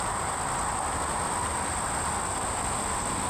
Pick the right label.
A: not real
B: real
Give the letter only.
B